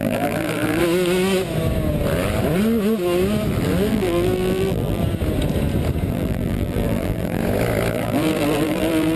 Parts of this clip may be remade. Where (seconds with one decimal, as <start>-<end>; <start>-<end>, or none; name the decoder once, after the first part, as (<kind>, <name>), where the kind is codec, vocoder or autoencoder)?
0.0-0.8 (vocoder, BigVGAN v2); 3.9-5.0; 6.1-7.4; 7.9-9.2